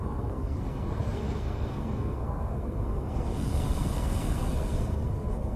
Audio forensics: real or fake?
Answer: fake